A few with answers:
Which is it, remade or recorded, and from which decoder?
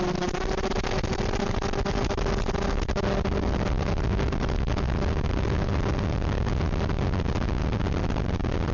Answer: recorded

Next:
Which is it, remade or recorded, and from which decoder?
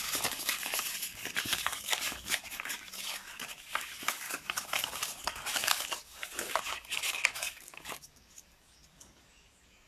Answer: remade, codec, DAC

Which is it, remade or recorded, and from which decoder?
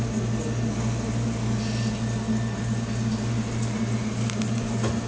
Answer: recorded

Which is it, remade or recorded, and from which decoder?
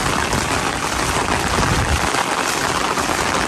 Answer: recorded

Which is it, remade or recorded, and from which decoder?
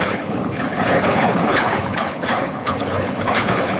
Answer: remade, codec, HILCodec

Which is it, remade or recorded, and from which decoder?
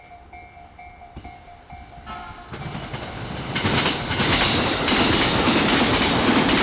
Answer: recorded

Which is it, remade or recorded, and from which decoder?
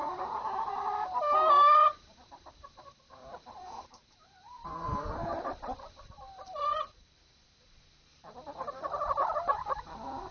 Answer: remade, vocoder, BigVGAN v2